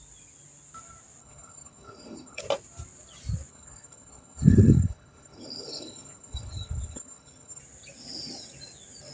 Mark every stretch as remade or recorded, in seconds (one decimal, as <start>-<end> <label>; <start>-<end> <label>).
0.0-1.2 recorded; 1.2-2.4 remade; 2.4-3.5 recorded; 3.5-7.6 remade; 7.6-9.1 recorded